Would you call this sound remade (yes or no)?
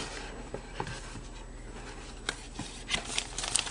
no